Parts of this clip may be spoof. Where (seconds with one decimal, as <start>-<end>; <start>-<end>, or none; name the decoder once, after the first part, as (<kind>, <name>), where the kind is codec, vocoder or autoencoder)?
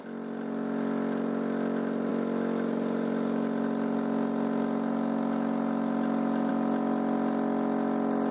none